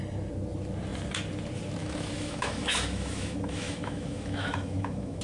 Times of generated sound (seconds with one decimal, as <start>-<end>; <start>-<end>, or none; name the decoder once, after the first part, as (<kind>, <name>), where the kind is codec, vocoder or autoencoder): 1.8-5.2 (autoencoder, DAC-VAE)